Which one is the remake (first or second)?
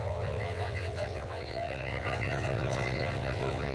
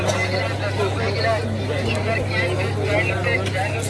first